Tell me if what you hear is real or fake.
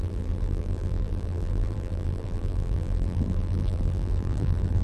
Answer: fake